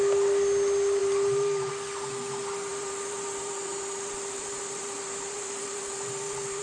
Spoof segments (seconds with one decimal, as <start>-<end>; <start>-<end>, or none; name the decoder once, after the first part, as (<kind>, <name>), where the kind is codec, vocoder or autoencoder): 1.0-1.7 (vocoder, BigVGAN v2); 2.7-6.6